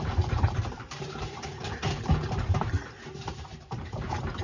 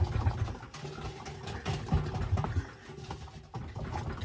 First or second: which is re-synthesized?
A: first